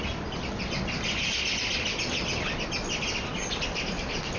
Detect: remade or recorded recorded